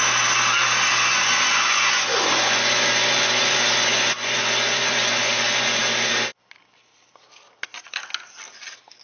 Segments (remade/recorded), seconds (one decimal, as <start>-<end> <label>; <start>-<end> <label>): 0.0-1.1 recorded; 1.1-5.8 remade; 5.8-9.0 recorded